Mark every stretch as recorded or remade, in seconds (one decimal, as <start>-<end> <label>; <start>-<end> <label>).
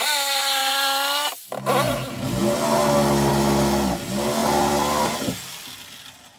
0.0-0.6 recorded; 0.6-1.6 remade; 1.6-4.4 recorded; 4.4-5.0 remade; 5.0-6.4 recorded